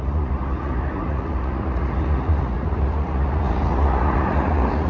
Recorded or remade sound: remade